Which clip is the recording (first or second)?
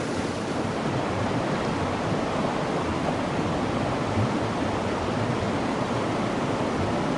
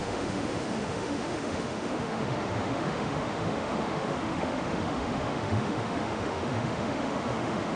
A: first